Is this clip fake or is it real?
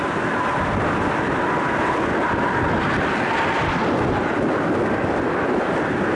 real